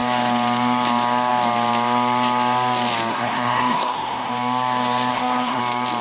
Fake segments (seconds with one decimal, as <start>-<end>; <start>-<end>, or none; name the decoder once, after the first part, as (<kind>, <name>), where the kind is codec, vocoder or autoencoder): 3.1-4.3 (codec, SNAC); 5.1-5.6